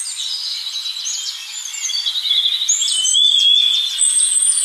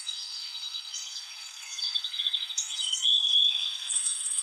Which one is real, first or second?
first